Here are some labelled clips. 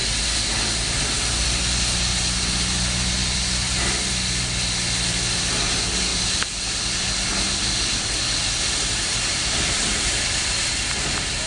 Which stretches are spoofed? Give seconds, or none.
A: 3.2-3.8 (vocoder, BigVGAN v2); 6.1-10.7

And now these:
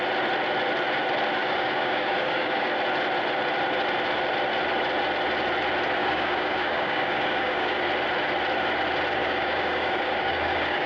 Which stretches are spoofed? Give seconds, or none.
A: 1.4-2.7 (codec, DAC); 6.0-7.8; 9.2-10.9

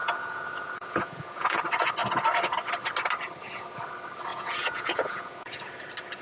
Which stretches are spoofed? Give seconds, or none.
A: 0.0-1.6 (vocoder, Vocos); 4.3-5.7

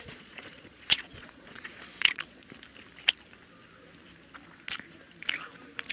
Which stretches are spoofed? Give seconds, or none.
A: 0.0-2.4 (vocoder, Vocos)

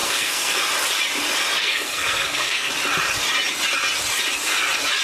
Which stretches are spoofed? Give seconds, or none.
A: 0.0-0.6 (codec, SNAC); 1.6-2.7

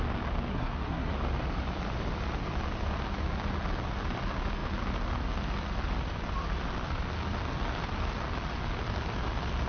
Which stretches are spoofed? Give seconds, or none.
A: 0.5-1.1 (codec, SNAC)